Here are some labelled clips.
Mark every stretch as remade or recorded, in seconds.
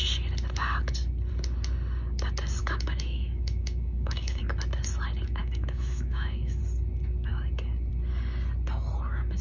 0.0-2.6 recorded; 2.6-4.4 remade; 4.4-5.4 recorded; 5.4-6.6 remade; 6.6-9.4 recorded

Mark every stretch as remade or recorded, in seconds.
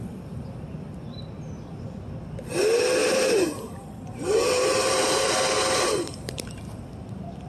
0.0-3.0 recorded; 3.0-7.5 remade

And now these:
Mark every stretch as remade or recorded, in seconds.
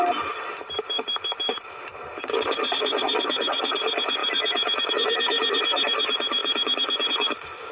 0.0-7.7 remade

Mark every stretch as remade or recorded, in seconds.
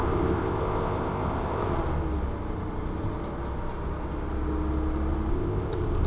0.0-1.6 remade; 1.6-5.3 recorded; 5.3-6.1 remade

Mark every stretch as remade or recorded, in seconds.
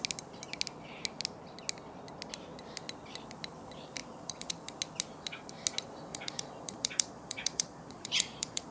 0.0-4.0 recorded; 4.0-4.5 remade; 4.5-6.1 recorded; 6.1-8.7 remade